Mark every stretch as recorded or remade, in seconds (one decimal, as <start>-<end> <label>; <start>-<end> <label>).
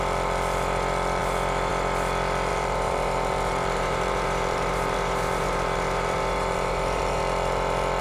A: 0.0-2.5 recorded; 2.5-7.2 remade; 7.2-8.0 recorded